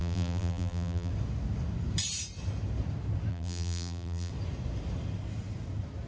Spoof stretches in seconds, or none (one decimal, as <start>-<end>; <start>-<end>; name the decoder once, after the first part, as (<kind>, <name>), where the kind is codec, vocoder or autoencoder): 0.0-1.1 (vocoder, BigVGAN v2); 3.3-4.3